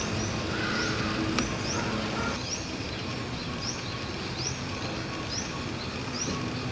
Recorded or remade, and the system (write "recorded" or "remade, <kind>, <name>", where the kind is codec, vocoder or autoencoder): recorded